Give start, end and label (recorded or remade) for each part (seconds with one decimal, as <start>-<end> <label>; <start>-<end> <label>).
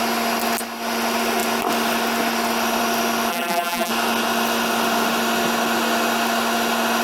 0.0-3.3 recorded; 3.3-3.9 remade; 3.9-7.0 recorded